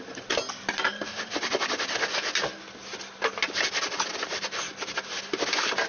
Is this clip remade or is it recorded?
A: recorded